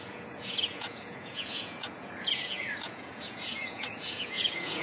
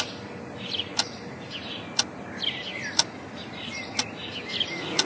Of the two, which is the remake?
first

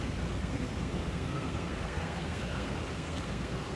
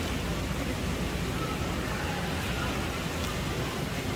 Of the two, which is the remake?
first